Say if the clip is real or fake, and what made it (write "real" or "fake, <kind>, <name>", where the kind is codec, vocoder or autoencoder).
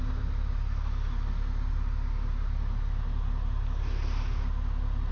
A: real